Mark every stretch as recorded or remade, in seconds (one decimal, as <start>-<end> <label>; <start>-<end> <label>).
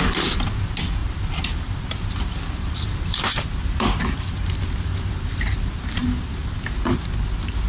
0.0-1.0 recorded; 1.0-5.6 remade; 5.6-7.7 recorded